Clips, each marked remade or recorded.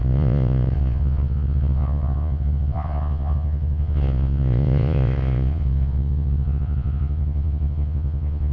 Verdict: remade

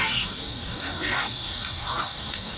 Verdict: remade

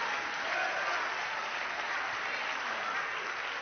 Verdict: recorded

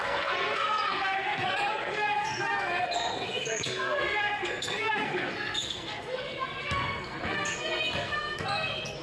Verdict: remade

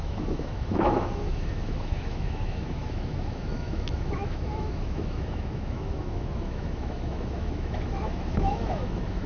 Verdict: remade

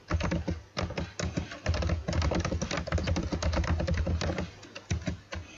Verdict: recorded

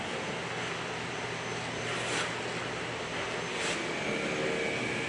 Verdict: recorded